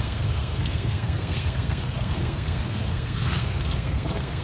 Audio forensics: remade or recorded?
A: remade